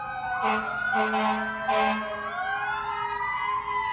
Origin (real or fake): real